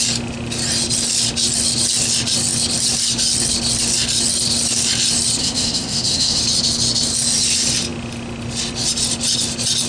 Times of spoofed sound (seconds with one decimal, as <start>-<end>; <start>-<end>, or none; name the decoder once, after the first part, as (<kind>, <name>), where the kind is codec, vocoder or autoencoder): 5.4-6.4 (codec, SNAC)